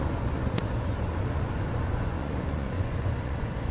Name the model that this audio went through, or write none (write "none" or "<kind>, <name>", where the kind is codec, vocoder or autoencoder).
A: vocoder, Vocos